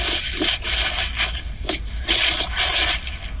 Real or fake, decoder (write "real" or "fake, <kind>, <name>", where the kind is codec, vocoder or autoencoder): real